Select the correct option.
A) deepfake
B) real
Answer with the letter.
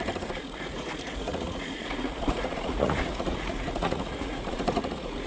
A